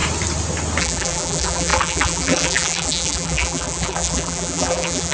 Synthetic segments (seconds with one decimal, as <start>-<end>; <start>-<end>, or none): 0.8-5.1